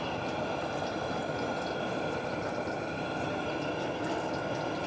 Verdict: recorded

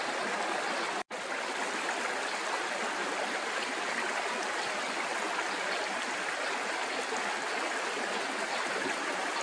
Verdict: recorded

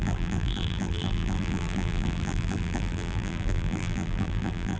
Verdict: remade